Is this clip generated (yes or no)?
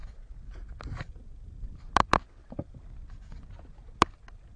no